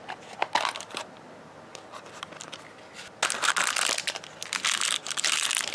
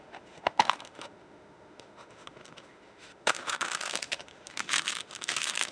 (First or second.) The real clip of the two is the first